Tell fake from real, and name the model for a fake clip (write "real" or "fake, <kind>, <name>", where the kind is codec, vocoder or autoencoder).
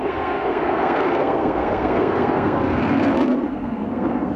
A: fake, codec, SNAC